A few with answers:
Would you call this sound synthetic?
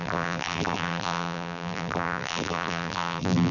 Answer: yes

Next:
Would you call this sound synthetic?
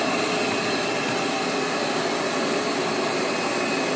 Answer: no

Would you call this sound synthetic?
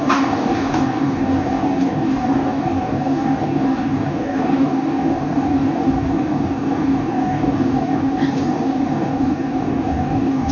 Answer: yes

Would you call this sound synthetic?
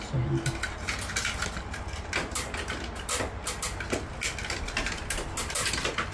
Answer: no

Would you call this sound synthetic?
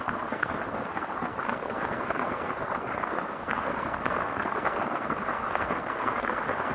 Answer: yes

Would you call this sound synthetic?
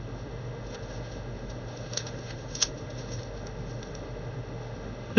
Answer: yes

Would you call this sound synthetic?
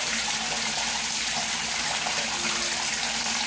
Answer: no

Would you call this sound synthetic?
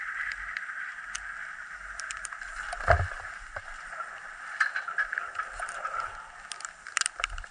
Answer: no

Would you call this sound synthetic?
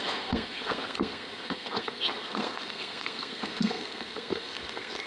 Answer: yes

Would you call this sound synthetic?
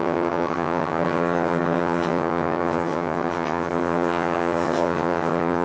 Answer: yes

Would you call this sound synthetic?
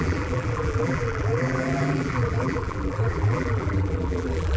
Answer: yes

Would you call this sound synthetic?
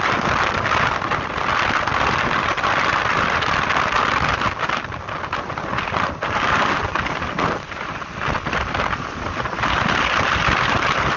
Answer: no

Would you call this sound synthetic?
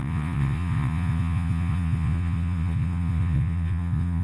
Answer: yes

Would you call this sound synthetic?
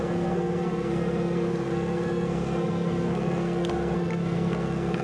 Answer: yes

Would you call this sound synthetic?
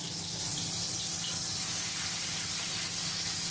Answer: no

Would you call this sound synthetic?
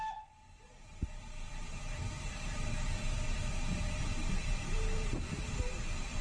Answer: yes